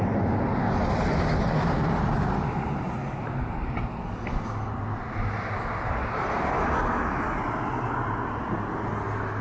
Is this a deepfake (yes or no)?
no